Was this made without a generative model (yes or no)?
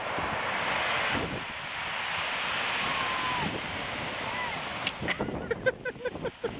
yes